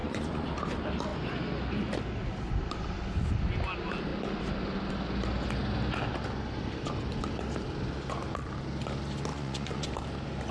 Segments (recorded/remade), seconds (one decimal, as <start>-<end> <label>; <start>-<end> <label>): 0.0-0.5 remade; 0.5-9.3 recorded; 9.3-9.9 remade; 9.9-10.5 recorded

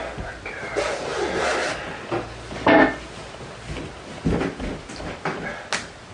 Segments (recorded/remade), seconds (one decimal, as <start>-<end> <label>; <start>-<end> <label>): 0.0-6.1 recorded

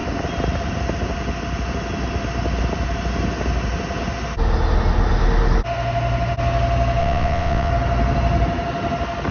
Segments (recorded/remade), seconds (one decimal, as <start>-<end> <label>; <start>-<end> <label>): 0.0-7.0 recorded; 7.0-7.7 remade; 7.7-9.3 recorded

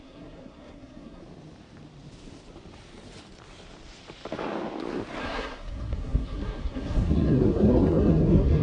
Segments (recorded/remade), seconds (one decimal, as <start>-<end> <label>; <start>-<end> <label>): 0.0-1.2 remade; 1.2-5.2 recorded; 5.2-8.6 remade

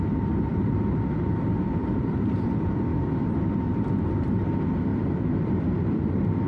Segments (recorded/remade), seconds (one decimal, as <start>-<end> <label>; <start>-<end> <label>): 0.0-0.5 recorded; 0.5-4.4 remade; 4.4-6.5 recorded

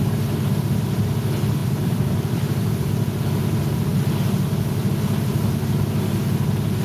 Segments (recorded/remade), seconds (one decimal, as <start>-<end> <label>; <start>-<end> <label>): 0.0-1.6 recorded; 1.6-2.7 remade; 2.7-6.8 recorded

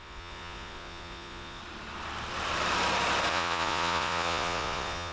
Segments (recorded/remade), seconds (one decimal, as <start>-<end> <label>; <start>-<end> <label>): 0.0-1.6 remade; 1.6-3.3 recorded; 3.3-5.1 remade